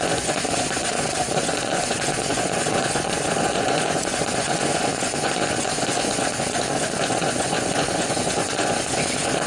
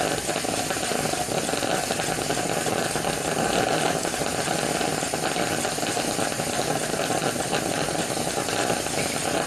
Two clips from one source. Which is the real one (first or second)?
second